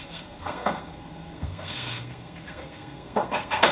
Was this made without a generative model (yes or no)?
no